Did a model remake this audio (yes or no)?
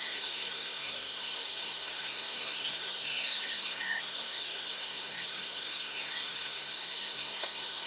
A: yes